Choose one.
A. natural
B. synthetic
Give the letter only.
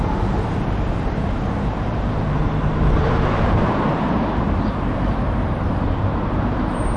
B